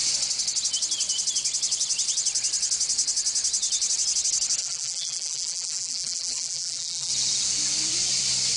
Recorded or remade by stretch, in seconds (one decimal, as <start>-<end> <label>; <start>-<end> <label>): 0.0-4.6 recorded; 4.6-7.1 remade; 7.1-8.6 recorded